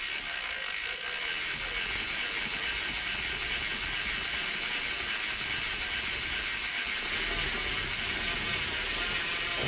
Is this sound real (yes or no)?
yes